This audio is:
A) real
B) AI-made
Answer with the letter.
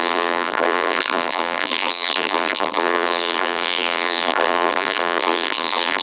B